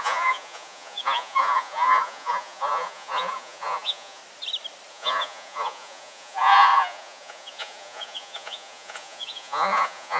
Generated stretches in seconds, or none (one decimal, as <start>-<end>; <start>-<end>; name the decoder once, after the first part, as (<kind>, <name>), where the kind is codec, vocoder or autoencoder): 0.0-4.2 (vocoder, Vocos); 4.9-10.2